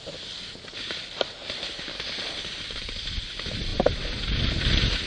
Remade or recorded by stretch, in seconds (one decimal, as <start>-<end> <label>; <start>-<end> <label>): 0.0-5.1 recorded